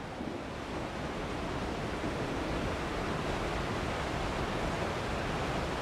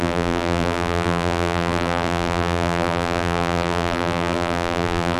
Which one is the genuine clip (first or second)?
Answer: first